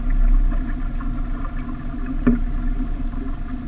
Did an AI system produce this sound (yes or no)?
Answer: no